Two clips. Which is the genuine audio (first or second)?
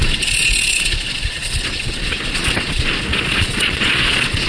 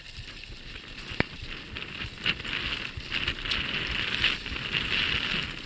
second